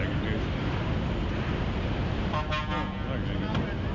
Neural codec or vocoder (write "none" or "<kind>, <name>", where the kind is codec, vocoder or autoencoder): none